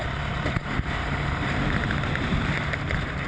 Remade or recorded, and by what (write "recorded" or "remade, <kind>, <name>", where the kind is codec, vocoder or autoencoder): remade, vocoder, BigVGAN v2